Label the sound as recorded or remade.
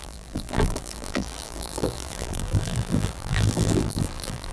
remade